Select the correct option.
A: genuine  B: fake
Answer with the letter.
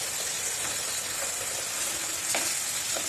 A